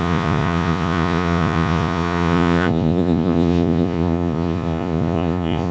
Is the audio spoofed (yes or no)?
yes